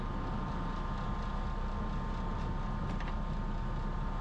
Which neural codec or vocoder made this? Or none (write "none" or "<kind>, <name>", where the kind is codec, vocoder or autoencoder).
none